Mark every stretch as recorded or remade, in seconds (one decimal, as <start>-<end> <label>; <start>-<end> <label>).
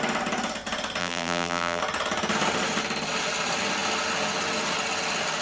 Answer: 0.0-1.0 recorded; 1.0-1.8 remade; 1.8-5.4 recorded